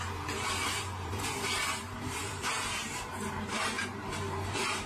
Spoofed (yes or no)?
yes